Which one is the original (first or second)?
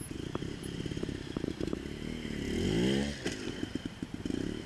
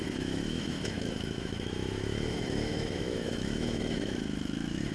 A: first